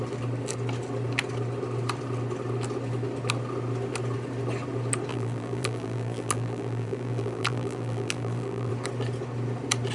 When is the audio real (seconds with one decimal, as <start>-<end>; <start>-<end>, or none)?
0.0-5.1; 8.7-9.9